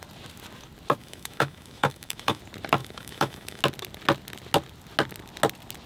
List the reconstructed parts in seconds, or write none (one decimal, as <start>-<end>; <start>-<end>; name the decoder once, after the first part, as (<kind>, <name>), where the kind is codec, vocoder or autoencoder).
1.0-2.4 (autoencoder, DAC-VAE); 2.8-3.6